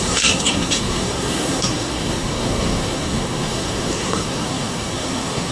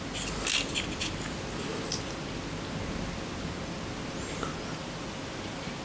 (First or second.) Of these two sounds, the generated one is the first